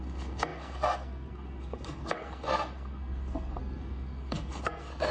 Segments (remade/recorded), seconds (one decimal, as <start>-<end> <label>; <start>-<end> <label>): 0.0-5.1 remade

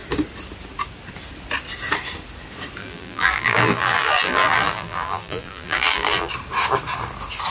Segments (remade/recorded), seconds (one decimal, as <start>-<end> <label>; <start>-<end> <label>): 0.0-2.8 recorded; 2.8-6.3 remade; 6.3-7.5 recorded

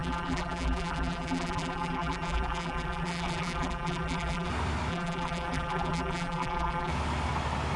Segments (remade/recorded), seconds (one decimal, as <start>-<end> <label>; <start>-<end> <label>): 0.0-4.5 remade; 4.5-4.9 recorded; 4.9-6.9 remade; 6.9-7.8 recorded

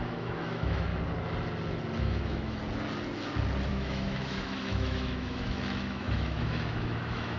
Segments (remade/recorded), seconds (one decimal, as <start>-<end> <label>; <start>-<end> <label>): 0.0-0.9 remade; 0.9-2.0 recorded; 2.0-2.6 remade; 2.6-3.7 recorded; 3.7-7.4 remade

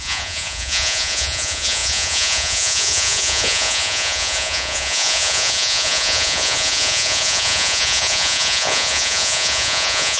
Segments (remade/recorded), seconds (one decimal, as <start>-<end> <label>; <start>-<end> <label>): 0.0-10.2 remade

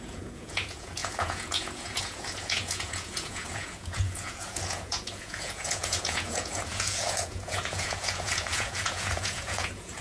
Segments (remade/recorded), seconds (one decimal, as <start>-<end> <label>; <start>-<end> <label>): 0.0-10.0 remade